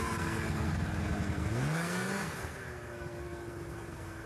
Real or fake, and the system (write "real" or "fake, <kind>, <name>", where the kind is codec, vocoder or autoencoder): fake, codec, SNAC